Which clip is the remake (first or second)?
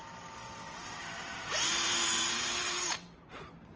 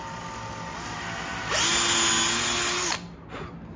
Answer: first